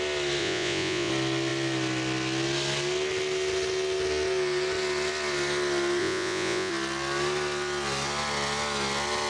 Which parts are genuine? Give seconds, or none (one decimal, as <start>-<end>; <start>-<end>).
0.0-0.4; 1.1-6.0; 6.7-9.3